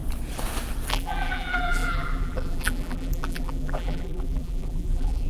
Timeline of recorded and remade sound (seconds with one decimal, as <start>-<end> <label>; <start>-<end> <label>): 0.0-0.9 recorded; 0.9-5.3 remade

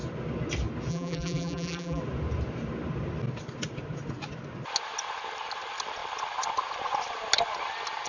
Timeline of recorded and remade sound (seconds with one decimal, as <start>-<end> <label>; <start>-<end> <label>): 0.0-0.9 recorded; 0.9-2.0 remade; 2.0-8.1 recorded

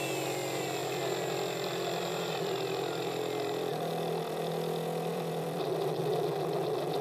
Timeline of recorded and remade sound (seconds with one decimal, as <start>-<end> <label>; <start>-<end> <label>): 0.0-0.8 recorded; 0.8-3.9 remade; 3.9-5.1 recorded; 5.1-6.0 remade; 6.0-7.0 recorded